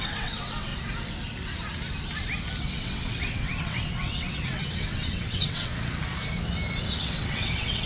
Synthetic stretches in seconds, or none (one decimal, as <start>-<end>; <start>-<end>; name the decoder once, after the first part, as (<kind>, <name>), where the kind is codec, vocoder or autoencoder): 0.0-0.7 (vocoder, WaveNeXt); 2.6-5.7; 7.0-7.9